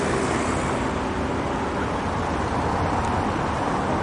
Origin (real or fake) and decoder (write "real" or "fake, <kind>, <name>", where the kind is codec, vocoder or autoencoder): real